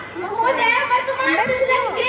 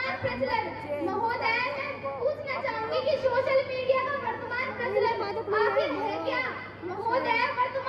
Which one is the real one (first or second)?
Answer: second